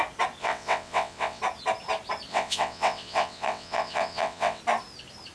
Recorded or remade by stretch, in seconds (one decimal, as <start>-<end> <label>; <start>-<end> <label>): 0.0-0.4 recorded; 0.4-1.4 remade; 1.4-2.3 recorded; 2.3-4.6 remade; 4.6-5.3 recorded